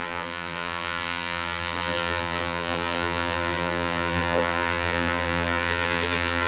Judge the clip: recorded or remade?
remade